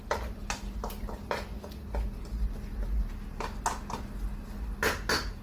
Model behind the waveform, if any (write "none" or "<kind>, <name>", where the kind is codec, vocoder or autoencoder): none